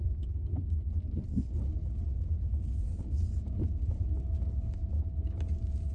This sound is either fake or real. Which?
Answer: real